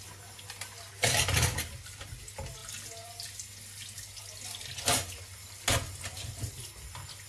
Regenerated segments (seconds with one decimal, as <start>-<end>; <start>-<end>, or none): none